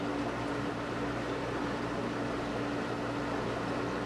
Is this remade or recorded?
recorded